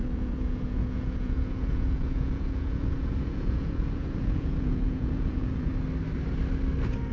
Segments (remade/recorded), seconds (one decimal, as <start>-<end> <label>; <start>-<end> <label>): 0.0-5.7 remade; 5.7-7.1 recorded